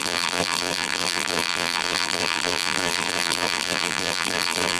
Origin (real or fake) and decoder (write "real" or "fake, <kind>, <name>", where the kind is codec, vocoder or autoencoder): fake, vocoder, BigVGAN v2